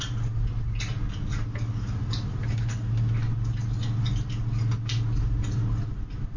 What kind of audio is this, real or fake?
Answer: real